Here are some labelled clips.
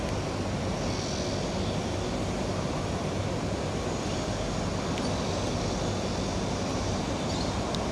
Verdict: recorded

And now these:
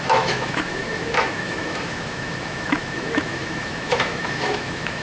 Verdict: remade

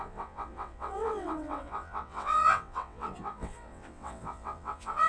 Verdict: remade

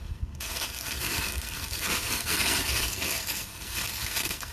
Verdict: remade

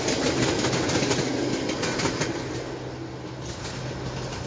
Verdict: recorded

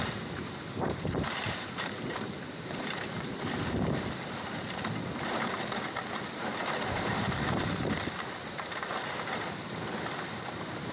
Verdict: remade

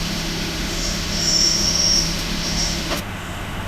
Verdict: remade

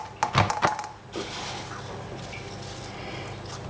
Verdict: recorded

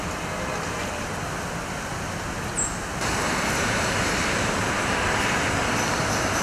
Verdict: recorded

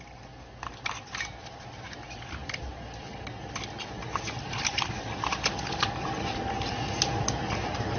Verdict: recorded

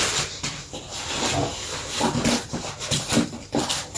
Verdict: recorded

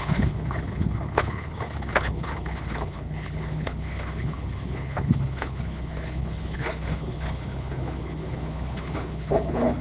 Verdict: remade